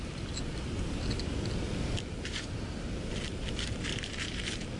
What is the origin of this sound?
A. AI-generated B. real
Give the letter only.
A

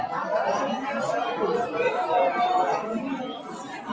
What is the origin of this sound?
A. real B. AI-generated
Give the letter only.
A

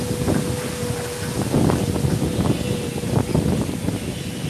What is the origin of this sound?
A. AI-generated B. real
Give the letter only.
B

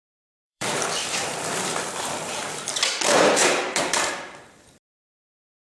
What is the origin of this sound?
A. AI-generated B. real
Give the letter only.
A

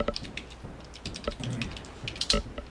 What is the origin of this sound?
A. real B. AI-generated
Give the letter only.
A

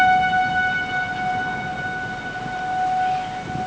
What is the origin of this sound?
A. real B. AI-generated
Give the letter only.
A